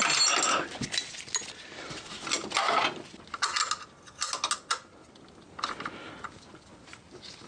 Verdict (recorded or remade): recorded